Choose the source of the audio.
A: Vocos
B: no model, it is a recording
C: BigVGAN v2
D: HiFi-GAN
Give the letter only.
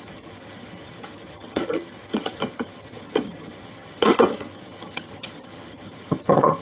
D